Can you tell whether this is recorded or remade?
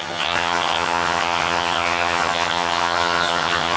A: remade